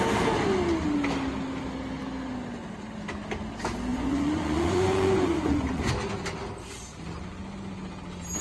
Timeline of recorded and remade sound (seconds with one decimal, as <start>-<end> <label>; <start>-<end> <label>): 0.0-3.9 recorded; 3.9-5.9 remade; 5.9-8.4 recorded